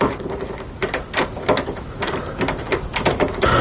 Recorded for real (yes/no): yes